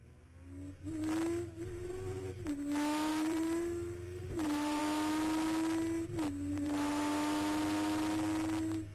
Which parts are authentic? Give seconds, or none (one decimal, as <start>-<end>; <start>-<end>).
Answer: 0.0-3.1; 4.8-6.5; 7.1-8.9